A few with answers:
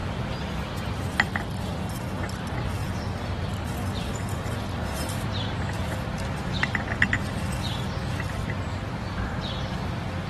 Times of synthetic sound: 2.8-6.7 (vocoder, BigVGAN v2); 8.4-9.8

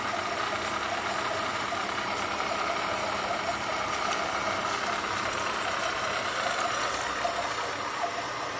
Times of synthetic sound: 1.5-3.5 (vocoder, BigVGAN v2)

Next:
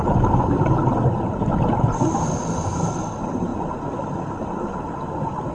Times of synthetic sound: none

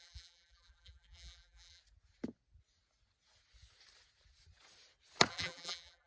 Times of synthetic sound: 0.0-1.8 (vocoder, BigVGAN v2); 5.3-6.1